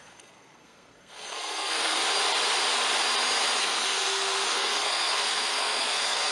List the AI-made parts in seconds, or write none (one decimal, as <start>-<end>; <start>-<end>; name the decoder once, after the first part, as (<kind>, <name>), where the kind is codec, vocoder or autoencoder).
0.0-2.0 (codec, SNAC); 3.6-6.3